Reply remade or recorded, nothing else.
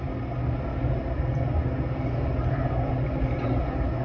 recorded